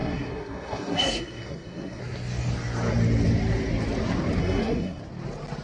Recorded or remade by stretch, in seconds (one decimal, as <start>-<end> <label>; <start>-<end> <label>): 0.0-2.0 remade; 2.0-4.4 recorded; 4.4-5.0 remade; 5.0-5.6 recorded